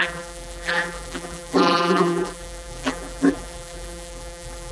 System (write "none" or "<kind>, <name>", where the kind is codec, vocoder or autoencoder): vocoder, BigVGAN v2